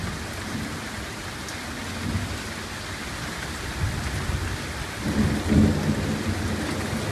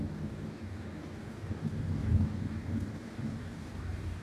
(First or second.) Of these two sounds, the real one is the first